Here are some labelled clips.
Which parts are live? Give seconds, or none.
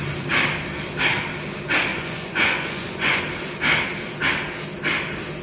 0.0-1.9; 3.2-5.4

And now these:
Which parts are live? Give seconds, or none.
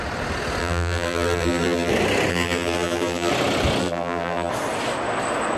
0.0-0.6; 1.9-2.3; 3.3-3.8; 4.5-5.6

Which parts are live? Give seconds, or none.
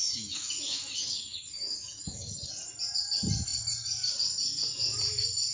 2.5-5.5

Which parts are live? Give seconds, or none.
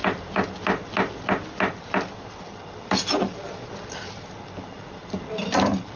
0.0-6.0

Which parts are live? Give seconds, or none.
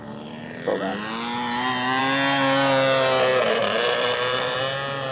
0.0-3.3; 4.6-5.1